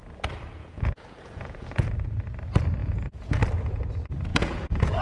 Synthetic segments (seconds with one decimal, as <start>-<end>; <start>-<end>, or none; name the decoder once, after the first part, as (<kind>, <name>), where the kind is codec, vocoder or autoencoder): 0.6-1.9 (vocoder, Vocos); 2.8-3.4; 4.3-5.0